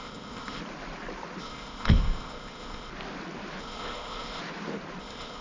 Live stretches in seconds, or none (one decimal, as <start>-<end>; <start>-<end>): 0.6-1.4; 2.9-3.6; 4.4-5.0